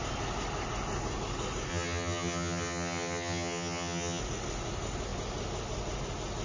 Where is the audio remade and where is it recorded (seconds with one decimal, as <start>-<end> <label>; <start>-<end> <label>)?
0.0-1.7 recorded; 1.7-4.2 remade; 4.2-6.4 recorded

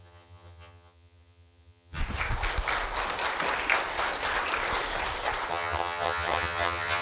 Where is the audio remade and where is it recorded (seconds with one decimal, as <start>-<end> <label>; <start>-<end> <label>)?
0.0-2.0 remade; 2.0-5.5 recorded; 5.5-7.0 remade

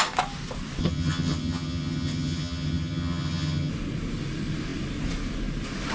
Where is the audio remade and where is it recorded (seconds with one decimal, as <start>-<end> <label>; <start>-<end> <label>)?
0.0-0.8 recorded; 0.8-3.7 remade; 3.7-5.9 recorded

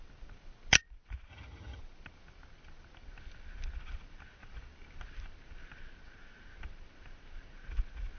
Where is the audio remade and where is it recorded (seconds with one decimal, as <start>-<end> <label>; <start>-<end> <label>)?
0.0-1.3 recorded; 1.3-1.8 remade; 1.8-8.2 recorded

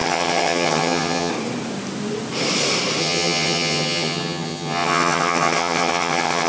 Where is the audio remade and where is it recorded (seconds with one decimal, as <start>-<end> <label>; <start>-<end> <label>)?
0.0-1.3 remade; 1.3-3.0 recorded; 3.0-6.5 remade